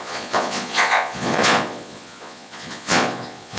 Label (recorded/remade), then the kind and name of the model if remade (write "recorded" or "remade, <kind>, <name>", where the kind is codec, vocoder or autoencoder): remade, vocoder, Vocos